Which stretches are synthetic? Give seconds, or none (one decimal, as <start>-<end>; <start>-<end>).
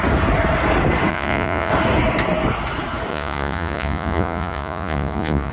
1.1-1.7; 3.1-5.5